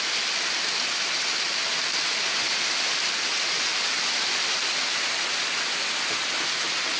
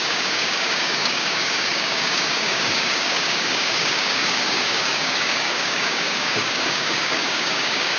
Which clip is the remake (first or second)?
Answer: second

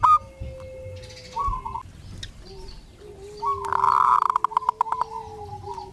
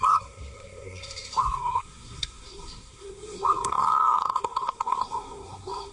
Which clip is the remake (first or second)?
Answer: second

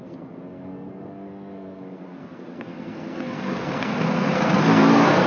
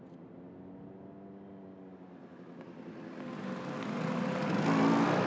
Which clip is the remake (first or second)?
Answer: first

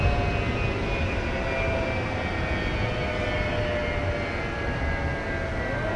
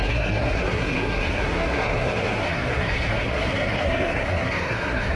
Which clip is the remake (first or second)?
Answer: second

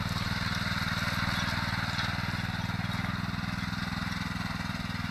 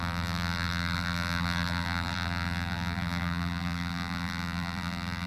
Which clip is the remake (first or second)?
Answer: second